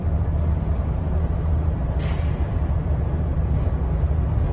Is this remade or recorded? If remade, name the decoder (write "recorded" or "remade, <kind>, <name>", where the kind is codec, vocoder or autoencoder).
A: recorded